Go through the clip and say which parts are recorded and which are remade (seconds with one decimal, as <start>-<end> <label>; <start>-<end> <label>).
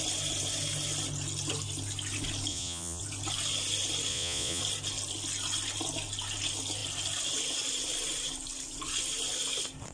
0.0-2.5 recorded; 2.5-3.0 remade; 3.0-4.1 recorded; 4.1-4.6 remade; 4.6-9.9 recorded